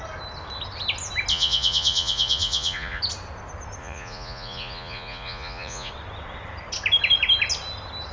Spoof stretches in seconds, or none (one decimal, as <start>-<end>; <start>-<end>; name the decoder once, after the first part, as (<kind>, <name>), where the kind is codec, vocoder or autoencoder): 1.3-3.0 (vocoder, Vocos); 3.8-5.9